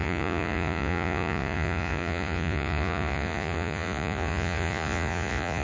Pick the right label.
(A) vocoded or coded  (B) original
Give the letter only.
A